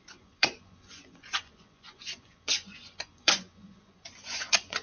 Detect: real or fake fake